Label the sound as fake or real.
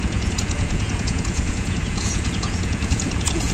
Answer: fake